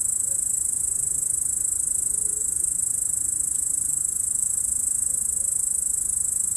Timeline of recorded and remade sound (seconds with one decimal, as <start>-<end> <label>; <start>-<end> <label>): 0.0-2.3 recorded; 2.3-2.8 remade; 2.8-3.9 recorded; 3.9-4.6 remade; 4.6-6.6 recorded